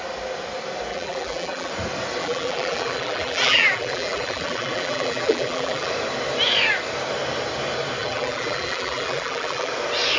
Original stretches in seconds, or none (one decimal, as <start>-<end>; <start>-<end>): 0.0-0.9; 1.7-2.2; 5.9-8.0; 9.7-10.2